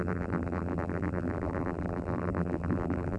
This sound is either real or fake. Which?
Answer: fake